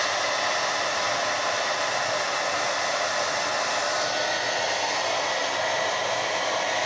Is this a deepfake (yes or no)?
no